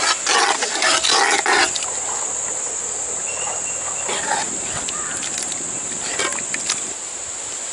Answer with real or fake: real